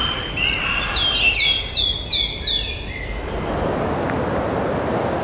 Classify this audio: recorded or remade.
recorded